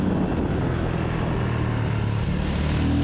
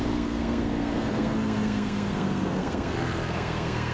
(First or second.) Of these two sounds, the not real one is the second